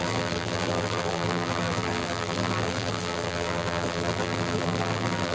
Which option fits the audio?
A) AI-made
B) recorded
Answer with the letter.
A